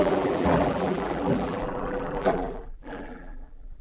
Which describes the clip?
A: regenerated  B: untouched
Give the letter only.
A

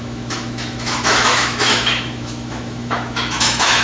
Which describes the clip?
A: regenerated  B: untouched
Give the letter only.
A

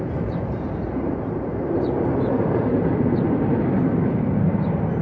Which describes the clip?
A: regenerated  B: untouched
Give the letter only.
A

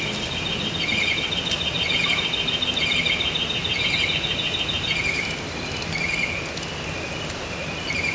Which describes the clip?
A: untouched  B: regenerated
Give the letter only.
A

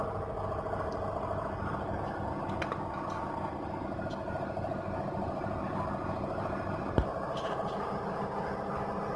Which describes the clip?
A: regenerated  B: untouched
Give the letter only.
B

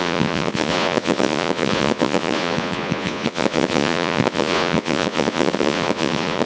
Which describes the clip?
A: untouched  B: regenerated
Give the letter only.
B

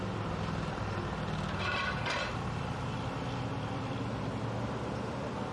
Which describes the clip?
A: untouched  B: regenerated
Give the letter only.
A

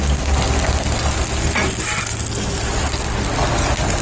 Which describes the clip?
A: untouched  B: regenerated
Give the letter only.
A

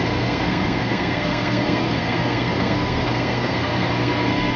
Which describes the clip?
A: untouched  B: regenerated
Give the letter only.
B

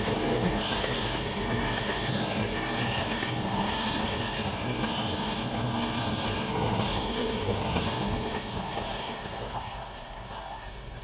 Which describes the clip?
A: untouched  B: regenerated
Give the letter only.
B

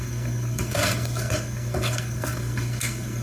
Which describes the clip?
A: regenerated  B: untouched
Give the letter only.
A